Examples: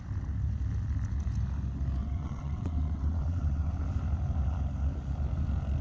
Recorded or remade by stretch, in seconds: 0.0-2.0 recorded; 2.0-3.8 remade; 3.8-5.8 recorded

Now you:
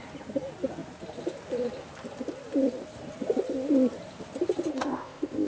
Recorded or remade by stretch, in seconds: 0.0-4.7 recorded; 4.7-5.5 remade

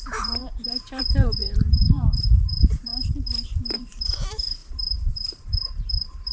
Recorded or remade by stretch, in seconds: 0.0-2.9 remade; 2.9-3.7 recorded; 3.7-6.3 remade